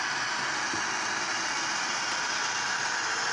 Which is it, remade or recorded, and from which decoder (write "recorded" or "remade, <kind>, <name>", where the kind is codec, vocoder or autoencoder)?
recorded